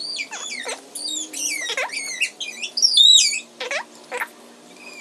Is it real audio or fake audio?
real